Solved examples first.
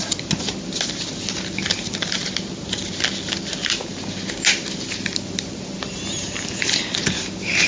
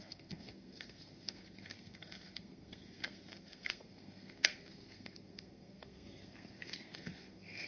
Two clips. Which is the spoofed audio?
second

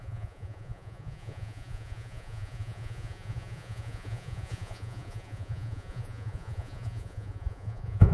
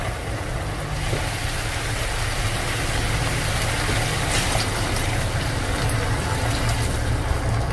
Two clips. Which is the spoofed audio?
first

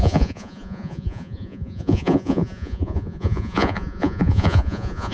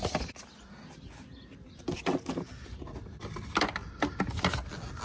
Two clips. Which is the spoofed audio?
first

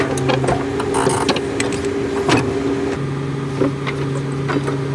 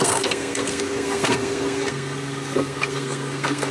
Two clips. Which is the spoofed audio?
second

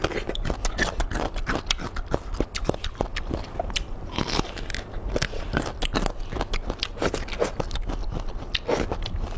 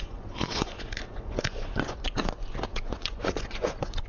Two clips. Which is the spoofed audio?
second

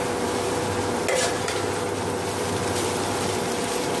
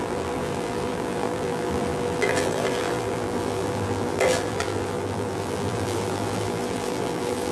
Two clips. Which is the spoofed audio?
second